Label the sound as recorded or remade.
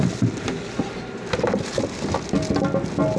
recorded